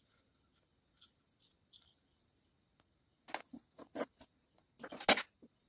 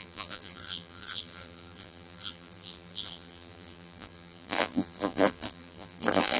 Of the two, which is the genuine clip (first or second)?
first